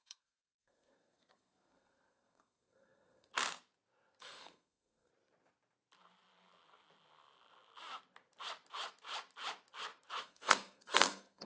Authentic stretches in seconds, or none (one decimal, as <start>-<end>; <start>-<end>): 3.3-4.2; 5.1-10.2